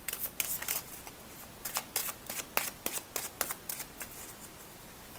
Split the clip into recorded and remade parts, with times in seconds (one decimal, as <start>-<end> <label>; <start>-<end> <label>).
0.0-5.2 recorded